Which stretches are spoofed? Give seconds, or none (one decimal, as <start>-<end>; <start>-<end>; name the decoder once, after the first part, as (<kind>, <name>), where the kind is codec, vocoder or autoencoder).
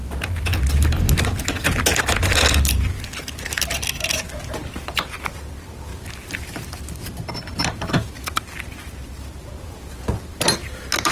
none